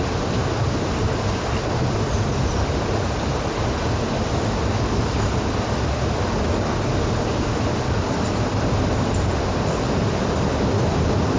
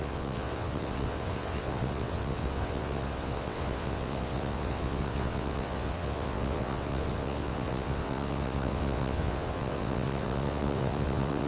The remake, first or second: second